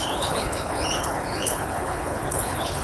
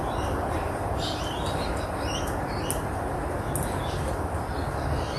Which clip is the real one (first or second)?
second